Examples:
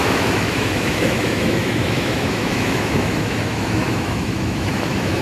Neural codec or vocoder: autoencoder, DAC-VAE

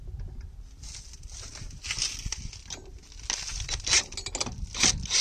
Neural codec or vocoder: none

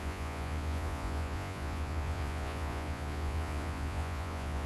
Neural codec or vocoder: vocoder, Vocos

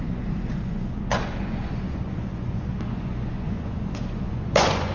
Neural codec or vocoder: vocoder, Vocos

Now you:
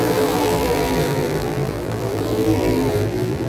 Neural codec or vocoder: vocoder, BigVGAN v2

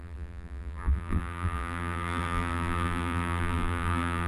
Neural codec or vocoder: vocoder, BigVGAN v2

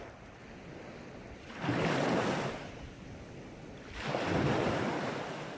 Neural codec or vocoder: none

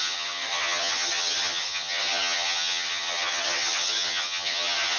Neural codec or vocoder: vocoder, HiFi-GAN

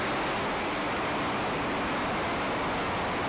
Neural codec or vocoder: none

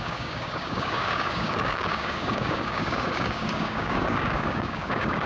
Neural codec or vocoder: codec, DAC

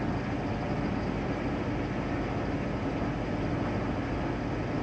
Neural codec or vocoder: none